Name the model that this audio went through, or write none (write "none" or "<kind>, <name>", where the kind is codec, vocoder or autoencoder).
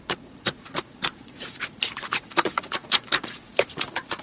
vocoder, Vocos